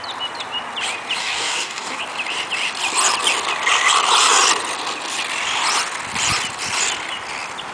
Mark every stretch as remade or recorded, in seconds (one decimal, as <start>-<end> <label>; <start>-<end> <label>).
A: 0.0-1.2 recorded; 1.2-2.0 remade; 2.0-7.7 recorded